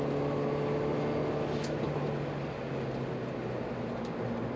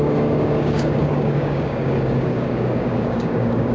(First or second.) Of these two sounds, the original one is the first